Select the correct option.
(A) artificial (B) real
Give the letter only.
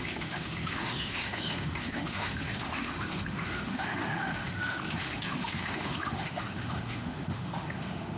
A